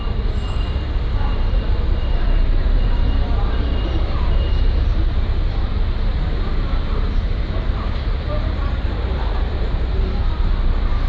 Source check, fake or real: fake